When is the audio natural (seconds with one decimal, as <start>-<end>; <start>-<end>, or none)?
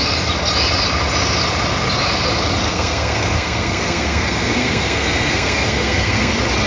0.0-2.7; 6.3-6.7